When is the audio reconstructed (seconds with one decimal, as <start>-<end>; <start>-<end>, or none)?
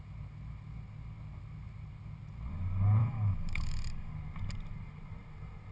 3.0-4.1